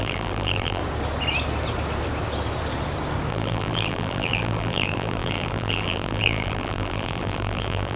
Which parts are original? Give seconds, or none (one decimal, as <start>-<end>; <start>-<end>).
0.8-3.3